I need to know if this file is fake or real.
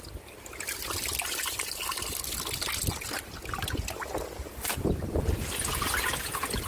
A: real